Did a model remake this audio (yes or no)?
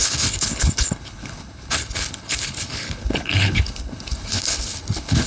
yes